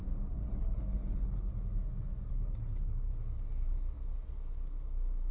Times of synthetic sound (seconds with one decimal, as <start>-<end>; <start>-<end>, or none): 0.5-1.5; 2.3-3.1